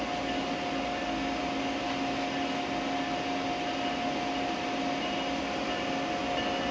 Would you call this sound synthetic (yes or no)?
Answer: no